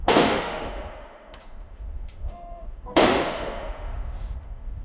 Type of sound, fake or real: fake